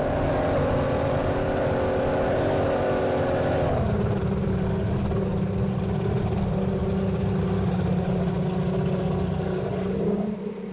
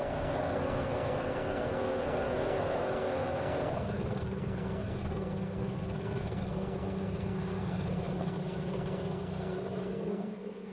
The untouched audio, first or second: first